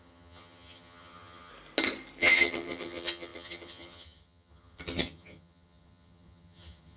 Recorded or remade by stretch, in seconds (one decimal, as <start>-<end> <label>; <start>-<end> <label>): 0.0-1.5 remade; 1.5-2.2 recorded; 2.2-7.0 remade